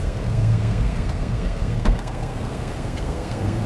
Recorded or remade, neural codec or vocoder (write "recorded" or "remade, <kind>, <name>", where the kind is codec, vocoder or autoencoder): remade, codec, SNAC